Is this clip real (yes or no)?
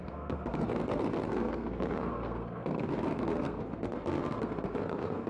no